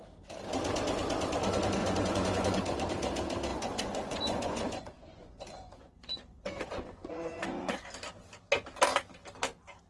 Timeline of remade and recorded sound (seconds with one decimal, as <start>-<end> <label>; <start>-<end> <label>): 0.0-1.8 recorded; 1.8-2.9 remade; 2.9-3.5 recorded; 3.5-7.7 remade; 7.7-9.9 recorded